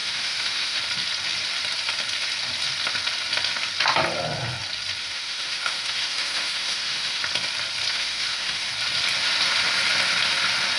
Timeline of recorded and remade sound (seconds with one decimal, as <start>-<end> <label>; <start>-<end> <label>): 0.0-0.8 remade; 0.8-5.0 recorded; 5.0-7.2 remade; 7.2-7.9 recorded; 7.9-8.7 remade; 8.7-10.8 recorded